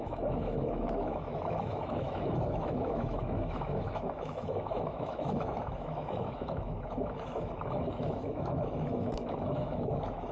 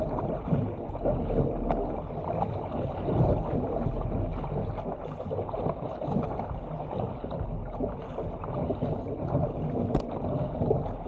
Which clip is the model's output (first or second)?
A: first